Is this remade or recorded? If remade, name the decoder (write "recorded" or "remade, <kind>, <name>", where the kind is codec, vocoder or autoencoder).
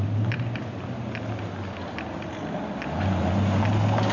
recorded